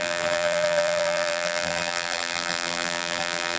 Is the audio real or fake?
fake